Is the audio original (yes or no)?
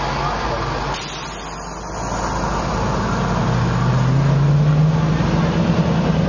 yes